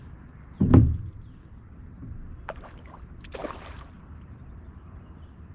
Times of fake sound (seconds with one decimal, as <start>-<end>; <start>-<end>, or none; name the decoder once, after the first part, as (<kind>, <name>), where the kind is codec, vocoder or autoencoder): none